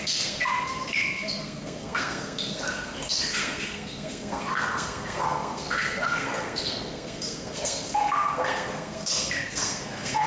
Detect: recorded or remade remade